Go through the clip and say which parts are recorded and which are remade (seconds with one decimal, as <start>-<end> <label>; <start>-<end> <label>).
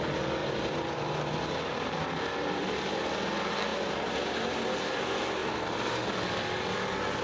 0.0-0.4 recorded; 0.4-2.9 remade; 2.9-3.7 recorded; 3.7-4.4 remade; 4.4-5.4 recorded; 5.4-6.1 remade; 6.1-7.2 recorded